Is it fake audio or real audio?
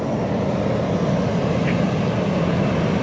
real